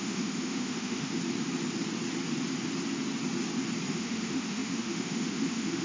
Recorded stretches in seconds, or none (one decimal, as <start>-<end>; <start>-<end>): 1.2-3.9